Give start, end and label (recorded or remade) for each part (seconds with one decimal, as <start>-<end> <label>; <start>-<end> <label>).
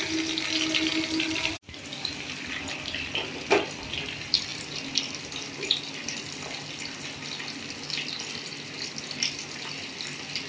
0.0-10.5 recorded